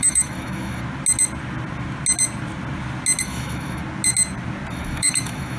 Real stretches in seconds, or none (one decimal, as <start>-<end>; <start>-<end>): 0.8-3.2; 3.8-4.7